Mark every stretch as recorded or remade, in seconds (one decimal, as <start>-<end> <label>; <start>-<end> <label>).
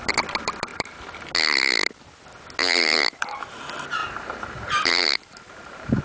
0.0-0.7 recorded; 0.7-1.3 remade; 1.3-2.6 recorded; 2.6-3.6 remade; 3.6-4.0 recorded; 4.0-6.0 remade